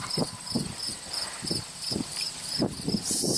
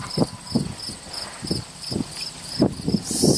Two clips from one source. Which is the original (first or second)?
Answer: second